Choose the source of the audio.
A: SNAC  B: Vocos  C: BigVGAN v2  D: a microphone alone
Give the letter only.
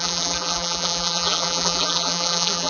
C